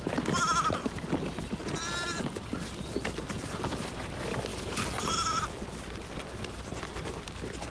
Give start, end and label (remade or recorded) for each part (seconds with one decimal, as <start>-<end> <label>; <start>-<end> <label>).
0.0-4.5 recorded; 4.5-5.4 remade; 5.4-7.7 recorded

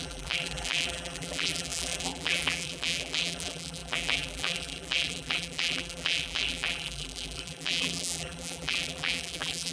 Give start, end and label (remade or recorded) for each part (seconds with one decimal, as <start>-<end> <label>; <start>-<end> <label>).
0.0-9.7 remade

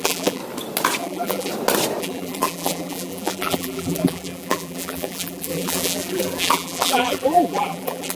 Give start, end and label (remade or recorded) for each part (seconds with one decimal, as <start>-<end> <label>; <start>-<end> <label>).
0.0-0.4 remade; 0.4-1.0 recorded; 1.0-1.5 remade; 1.5-2.0 recorded; 2.0-8.2 remade

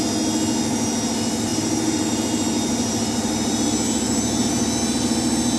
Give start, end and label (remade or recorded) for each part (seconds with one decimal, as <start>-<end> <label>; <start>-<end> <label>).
0.0-1.5 recorded; 1.5-3.7 remade; 3.7-5.6 recorded

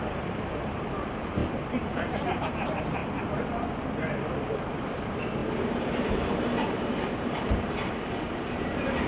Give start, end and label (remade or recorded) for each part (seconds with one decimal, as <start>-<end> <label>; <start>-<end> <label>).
0.0-3.0 remade; 3.0-4.3 recorded; 4.3-9.1 remade

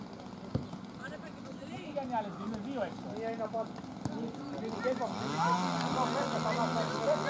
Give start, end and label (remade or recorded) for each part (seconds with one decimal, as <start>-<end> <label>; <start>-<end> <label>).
0.0-7.3 recorded

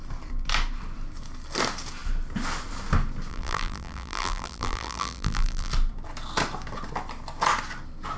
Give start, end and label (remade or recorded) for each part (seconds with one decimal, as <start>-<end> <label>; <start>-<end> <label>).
0.0-3.3 recorded; 3.3-5.7 remade; 5.7-8.2 recorded

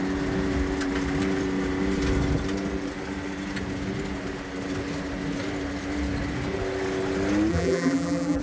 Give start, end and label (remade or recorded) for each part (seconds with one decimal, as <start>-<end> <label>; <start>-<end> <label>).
0.0-7.5 recorded; 7.5-8.4 remade